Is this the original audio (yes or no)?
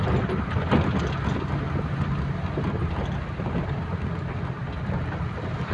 yes